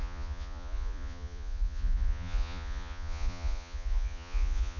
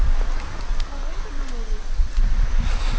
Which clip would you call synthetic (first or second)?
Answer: first